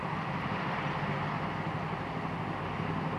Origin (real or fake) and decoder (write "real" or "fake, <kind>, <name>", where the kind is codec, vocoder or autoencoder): real